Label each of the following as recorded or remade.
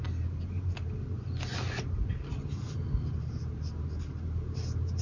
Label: recorded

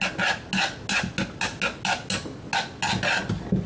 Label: recorded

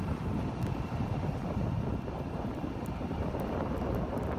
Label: recorded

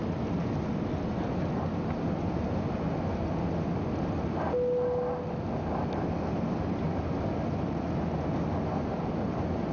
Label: recorded